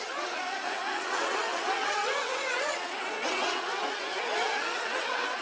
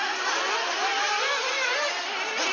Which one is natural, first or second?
second